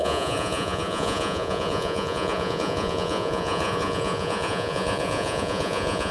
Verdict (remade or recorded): remade